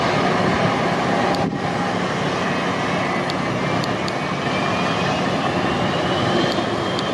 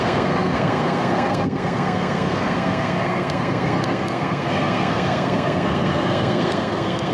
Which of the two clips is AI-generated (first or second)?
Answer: second